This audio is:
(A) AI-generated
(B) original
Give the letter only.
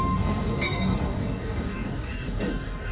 A